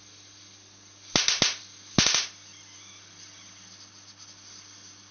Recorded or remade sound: recorded